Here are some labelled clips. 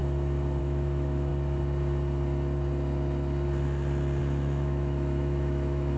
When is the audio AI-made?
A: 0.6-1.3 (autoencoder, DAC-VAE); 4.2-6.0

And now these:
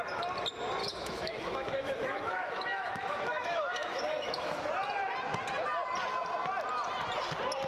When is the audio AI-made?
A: 0.8-4.6 (autoencoder, DAC-VAE)